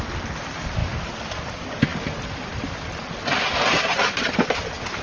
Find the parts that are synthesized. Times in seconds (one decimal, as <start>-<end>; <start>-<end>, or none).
0.8-1.4

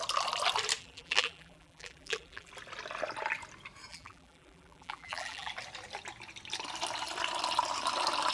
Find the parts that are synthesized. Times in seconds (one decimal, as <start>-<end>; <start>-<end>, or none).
0.8-2.5; 3.9-5.5

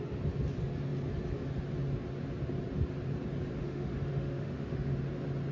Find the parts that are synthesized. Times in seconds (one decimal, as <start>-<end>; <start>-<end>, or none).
3.6-4.9

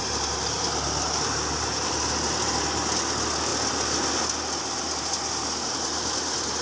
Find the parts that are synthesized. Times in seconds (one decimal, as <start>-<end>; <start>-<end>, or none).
none